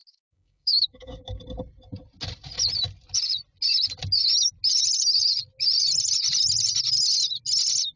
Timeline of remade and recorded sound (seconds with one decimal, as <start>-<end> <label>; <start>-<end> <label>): 0.0-1.4 remade; 1.4-8.0 recorded

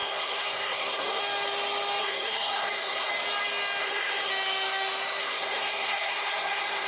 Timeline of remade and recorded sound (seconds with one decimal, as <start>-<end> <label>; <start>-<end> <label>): 0.0-1.2 remade; 1.2-2.0 recorded; 2.0-3.1 remade; 3.1-3.8 recorded; 3.8-4.3 remade; 4.3-5.2 recorded; 5.2-6.9 remade

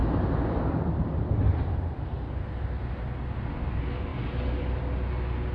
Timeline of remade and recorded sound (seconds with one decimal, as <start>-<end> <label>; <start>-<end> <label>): 0.0-2.2 remade; 2.2-4.1 recorded; 4.1-4.8 remade; 4.8-5.5 recorded

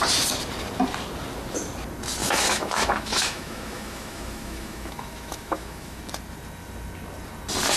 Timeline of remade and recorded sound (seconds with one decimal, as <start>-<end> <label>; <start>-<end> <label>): 0.0-2.2 recorded; 2.2-6.0 remade; 6.0-7.8 recorded